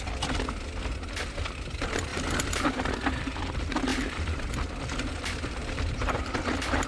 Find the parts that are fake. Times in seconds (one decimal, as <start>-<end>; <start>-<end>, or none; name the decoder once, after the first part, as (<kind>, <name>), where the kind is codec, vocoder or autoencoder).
3.9-4.5 (vocoder, BigVGAN v2); 5.6-6.2